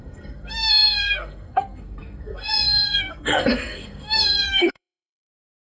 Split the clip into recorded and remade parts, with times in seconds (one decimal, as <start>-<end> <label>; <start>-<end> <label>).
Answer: 0.0-5.8 remade